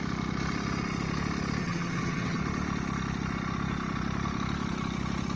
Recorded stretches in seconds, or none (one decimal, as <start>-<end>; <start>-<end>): 0.0-1.6; 2.4-5.4